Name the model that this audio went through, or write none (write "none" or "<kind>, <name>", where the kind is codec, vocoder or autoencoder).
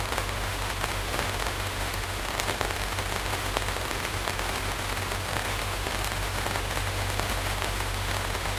autoencoder, DAC-VAE